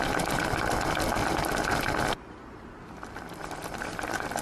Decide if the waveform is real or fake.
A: real